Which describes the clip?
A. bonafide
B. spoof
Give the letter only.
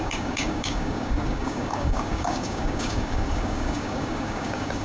B